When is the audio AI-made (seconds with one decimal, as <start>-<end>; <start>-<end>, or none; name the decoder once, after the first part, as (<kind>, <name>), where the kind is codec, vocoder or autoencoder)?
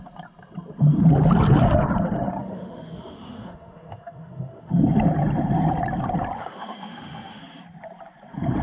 2.4-4.7 (autoencoder, DAC-VAE); 6.4-7.4